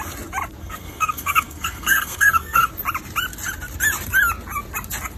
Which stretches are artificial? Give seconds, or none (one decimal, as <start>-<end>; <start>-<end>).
0.6-2.7